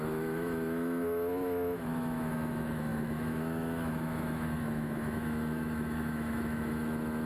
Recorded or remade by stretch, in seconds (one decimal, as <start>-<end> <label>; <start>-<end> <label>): 0.0-7.3 remade